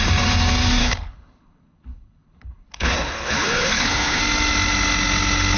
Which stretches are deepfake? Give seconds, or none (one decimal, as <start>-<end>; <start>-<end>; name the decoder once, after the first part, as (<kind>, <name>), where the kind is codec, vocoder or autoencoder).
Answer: 0.8-4.2 (codec, HILCodec)